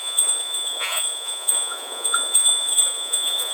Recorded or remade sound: remade